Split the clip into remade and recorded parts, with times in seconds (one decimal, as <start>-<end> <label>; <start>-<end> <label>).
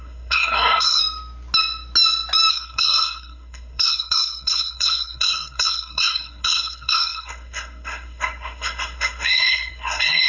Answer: 0.0-1.0 remade; 1.0-2.5 recorded; 2.5-10.3 remade